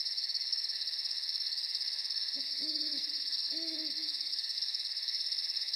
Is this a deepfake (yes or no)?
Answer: yes